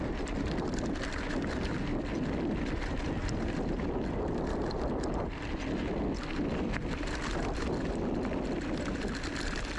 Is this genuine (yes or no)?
yes